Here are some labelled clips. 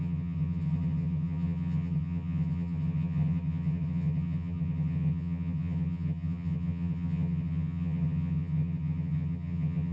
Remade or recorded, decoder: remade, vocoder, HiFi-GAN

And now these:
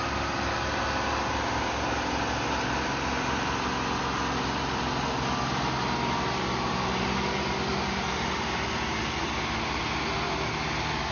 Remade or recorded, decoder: recorded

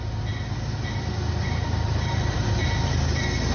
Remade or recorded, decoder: recorded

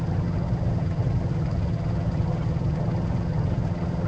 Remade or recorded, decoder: remade, vocoder, HiFi-GAN